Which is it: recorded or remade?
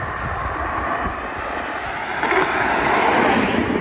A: recorded